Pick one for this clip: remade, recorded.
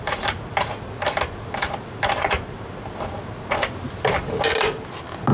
recorded